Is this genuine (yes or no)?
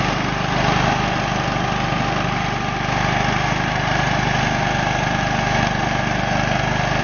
yes